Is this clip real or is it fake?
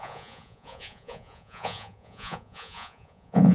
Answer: fake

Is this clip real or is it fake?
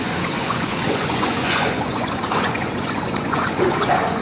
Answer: fake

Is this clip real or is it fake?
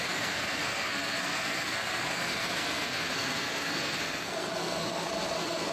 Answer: fake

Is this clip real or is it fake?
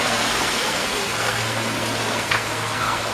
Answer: fake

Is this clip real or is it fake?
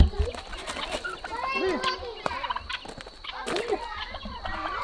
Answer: real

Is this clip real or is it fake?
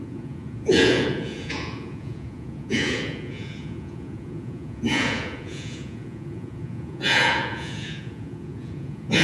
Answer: fake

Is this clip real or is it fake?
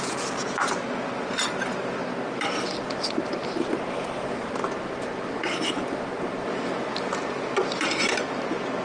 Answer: real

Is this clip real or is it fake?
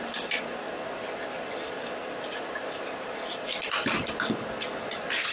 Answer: real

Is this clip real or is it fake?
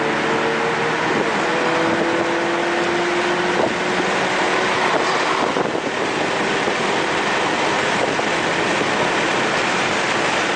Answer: real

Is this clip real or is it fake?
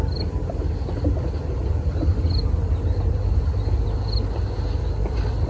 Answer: real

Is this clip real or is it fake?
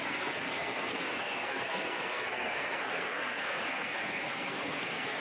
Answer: fake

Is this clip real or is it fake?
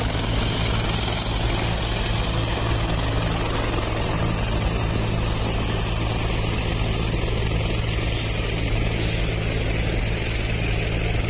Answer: real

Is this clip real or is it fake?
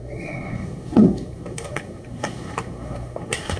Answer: fake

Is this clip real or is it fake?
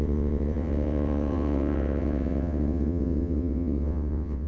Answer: fake